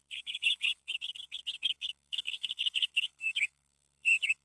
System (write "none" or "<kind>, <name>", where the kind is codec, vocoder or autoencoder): codec, SNAC